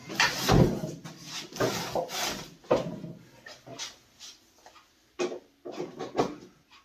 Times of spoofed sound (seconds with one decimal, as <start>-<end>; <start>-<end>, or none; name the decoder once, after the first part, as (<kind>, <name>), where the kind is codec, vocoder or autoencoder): none